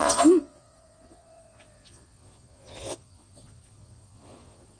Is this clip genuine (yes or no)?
no